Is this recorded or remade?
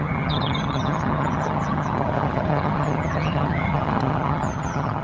remade